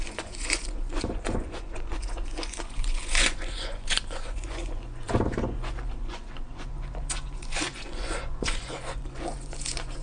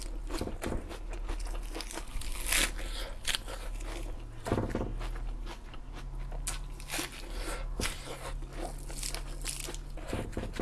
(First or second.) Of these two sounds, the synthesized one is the first